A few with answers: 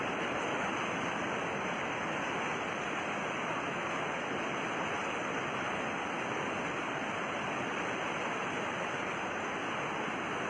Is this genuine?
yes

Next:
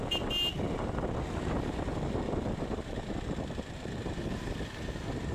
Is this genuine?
yes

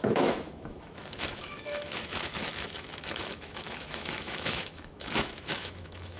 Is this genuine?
no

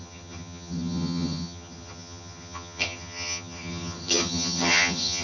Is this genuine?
no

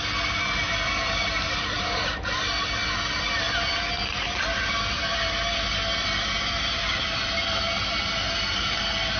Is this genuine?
yes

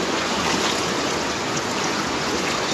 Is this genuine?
no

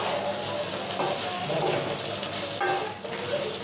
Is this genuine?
yes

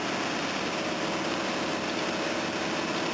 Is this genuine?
yes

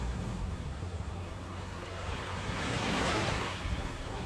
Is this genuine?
no